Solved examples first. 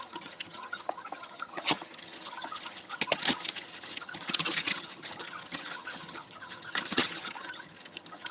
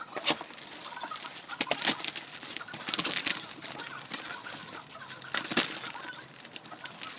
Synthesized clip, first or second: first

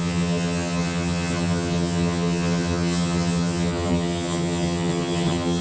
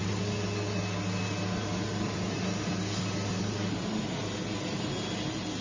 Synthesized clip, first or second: first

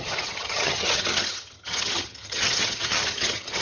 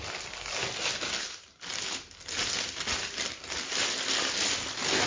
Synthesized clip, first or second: first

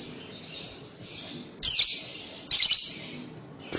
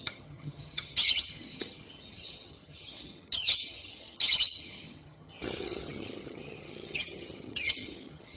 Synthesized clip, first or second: second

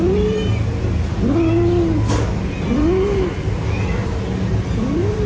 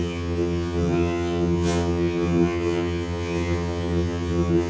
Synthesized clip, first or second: second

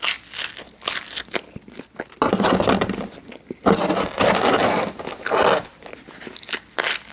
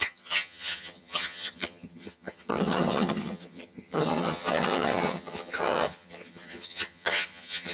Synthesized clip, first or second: second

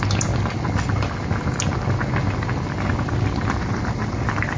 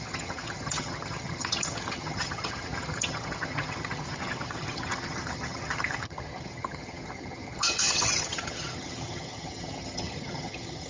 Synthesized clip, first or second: second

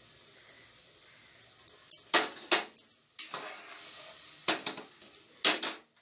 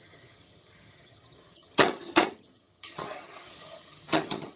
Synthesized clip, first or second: second